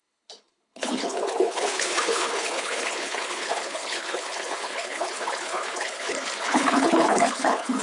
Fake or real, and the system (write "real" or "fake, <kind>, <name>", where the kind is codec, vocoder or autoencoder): fake, codec, HILCodec